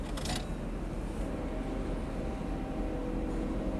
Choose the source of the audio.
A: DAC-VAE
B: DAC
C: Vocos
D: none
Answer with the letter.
D